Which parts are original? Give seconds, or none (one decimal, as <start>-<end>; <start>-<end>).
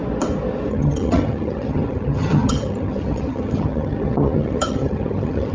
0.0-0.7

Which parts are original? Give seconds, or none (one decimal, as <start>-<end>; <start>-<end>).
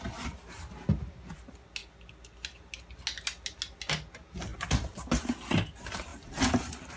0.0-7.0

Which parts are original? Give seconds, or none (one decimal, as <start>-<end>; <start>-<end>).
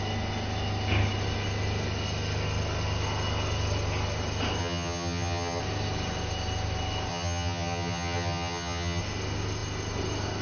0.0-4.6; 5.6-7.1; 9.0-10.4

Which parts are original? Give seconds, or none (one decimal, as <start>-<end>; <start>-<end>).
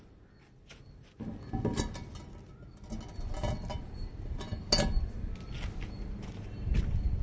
0.0-7.2